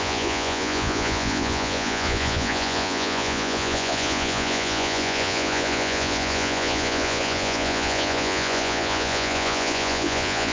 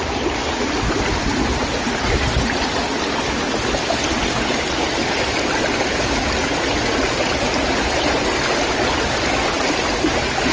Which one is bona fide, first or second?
second